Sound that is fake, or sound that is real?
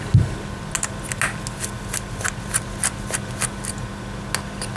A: real